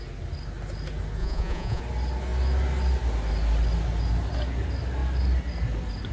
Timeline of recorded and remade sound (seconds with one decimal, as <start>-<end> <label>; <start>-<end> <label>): 0.0-1.2 recorded; 1.2-1.8 remade; 1.8-6.1 recorded